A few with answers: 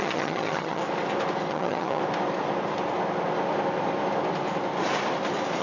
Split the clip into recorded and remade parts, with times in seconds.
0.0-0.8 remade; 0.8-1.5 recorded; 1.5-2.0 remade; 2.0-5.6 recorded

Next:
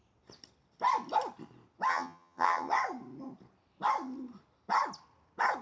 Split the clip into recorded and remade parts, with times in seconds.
0.0-1.9 recorded; 1.9-2.7 remade; 2.7-5.6 recorded